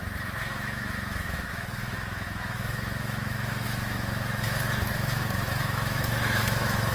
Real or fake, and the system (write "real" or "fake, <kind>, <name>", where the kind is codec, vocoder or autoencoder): fake, autoencoder, DAC-VAE